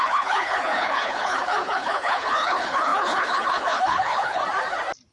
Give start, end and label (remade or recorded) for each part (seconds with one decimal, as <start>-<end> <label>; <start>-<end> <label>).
0.0-4.4 remade; 4.4-5.1 recorded